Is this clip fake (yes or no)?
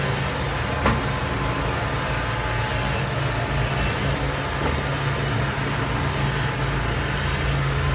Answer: no